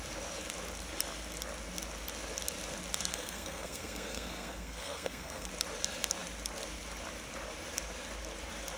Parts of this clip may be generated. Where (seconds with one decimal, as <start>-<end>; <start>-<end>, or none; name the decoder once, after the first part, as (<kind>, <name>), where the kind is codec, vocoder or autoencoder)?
3.1-5.5 (codec, SNAC)